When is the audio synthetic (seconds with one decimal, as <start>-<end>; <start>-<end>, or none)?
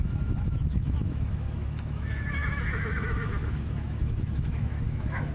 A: 0.0-5.3